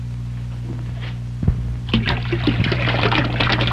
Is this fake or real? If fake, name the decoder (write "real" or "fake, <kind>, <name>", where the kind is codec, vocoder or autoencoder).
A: fake, vocoder, BigVGAN v2